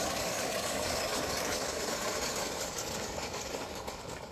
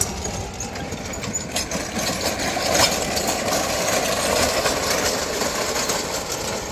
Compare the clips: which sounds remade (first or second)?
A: first